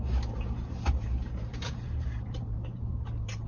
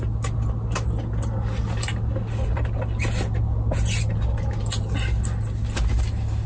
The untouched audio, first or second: second